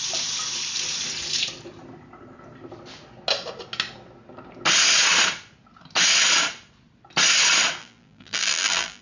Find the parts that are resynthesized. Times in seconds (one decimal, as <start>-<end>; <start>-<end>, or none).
7.8-9.0